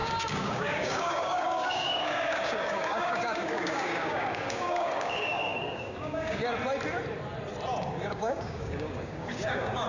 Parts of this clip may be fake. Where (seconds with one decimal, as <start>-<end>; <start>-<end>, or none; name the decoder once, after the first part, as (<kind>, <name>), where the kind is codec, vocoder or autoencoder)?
0.0-6.4 (codec, DAC); 7.9-9.9